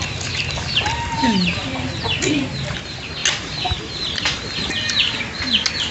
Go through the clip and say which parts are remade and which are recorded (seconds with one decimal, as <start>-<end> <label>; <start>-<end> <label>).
0.0-5.9 recorded